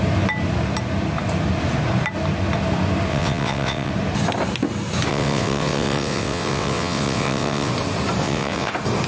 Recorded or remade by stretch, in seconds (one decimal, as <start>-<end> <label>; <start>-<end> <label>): 0.0-3.1 recorded; 3.1-3.9 remade; 3.9-5.1 recorded; 5.1-7.7 remade; 7.7-8.2 recorded; 8.2-8.7 remade; 8.7-9.1 recorded